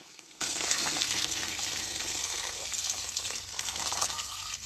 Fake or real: fake